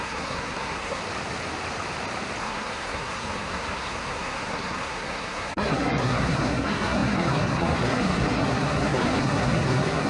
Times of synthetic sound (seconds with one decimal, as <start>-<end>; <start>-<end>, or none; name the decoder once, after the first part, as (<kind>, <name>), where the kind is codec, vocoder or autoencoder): 0.0-1.0 (codec, SNAC); 2.4-10.1